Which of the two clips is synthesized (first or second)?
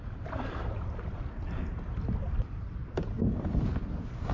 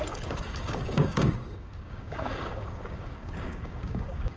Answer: second